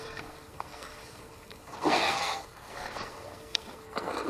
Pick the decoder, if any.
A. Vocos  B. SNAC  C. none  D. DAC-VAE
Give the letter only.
B